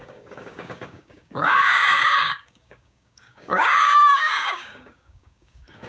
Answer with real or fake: fake